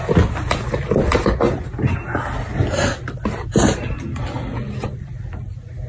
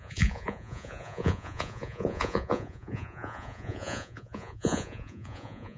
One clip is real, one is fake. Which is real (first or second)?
first